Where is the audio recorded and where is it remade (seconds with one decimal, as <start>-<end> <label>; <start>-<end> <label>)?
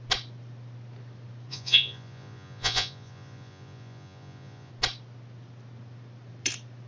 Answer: 0.0-1.5 recorded; 1.5-4.7 remade; 4.7-6.9 recorded